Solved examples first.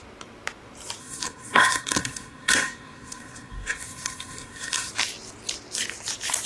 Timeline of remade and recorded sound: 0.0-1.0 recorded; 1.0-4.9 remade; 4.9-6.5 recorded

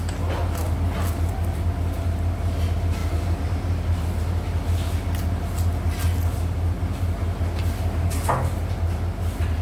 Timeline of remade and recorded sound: 0.0-9.6 recorded